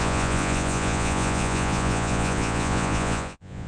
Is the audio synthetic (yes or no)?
yes